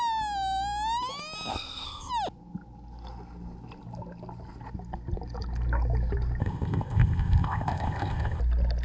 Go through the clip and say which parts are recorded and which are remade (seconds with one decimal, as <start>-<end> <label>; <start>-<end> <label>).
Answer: 0.0-1.5 recorded; 1.5-2.1 remade; 2.1-6.4 recorded; 6.4-8.4 remade; 8.4-8.8 recorded